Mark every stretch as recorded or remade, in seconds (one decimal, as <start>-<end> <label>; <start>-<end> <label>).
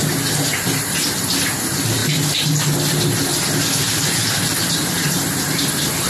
0.0-2.0 remade; 2.0-4.7 recorded; 4.7-6.1 remade